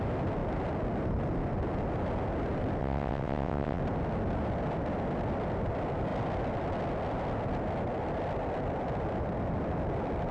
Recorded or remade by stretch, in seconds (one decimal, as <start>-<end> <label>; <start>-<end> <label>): 0.0-2.8 recorded; 2.8-3.8 remade; 3.8-10.3 recorded